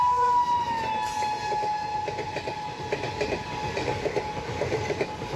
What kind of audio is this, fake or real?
real